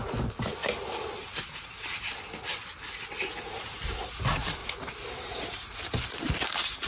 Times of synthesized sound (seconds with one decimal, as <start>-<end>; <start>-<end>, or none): 0.6-2.2; 4.6-5.7